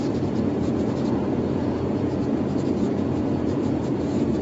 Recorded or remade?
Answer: remade